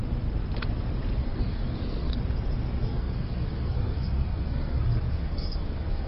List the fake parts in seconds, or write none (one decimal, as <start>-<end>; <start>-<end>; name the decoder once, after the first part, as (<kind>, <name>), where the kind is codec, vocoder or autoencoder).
1.2-2.2 (codec, SNAC); 2.8-6.1

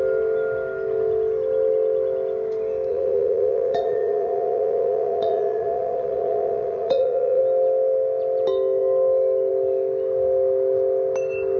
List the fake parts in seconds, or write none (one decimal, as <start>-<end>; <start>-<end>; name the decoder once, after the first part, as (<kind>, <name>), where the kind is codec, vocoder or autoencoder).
2.9-7.4 (vocoder, Vocos)

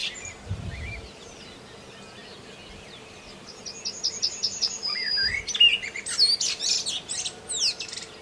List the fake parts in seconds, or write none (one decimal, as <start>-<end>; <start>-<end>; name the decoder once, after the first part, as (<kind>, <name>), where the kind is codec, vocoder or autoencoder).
0.0-1.5 (vocoder, BigVGAN v2); 4.4-5.4

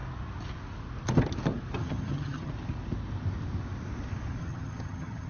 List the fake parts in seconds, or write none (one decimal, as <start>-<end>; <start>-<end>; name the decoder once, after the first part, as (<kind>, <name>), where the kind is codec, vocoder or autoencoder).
1.8-2.5 (vocoder, HiFi-GAN); 4.4-5.3

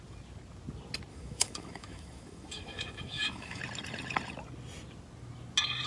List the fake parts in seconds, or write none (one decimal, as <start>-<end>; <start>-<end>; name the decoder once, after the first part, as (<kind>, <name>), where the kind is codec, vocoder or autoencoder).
1.1-3.6 (autoencoder, DAC-VAE)

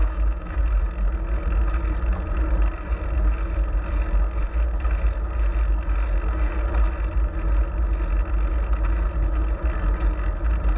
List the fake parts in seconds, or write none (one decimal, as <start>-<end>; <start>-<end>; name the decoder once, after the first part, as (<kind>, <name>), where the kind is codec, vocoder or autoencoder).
0.0-0.6 (autoencoder, DAC-VAE)